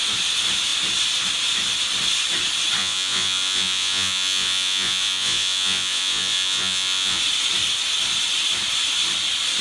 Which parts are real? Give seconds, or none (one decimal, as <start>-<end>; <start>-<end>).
0.0-2.8; 7.2-9.6